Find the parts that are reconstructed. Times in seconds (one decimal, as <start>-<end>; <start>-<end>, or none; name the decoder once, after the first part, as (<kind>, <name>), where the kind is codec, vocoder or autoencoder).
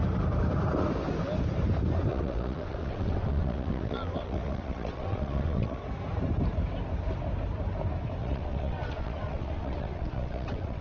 2.1-5.8 (vocoder, WaveNeXt); 8.2-10.8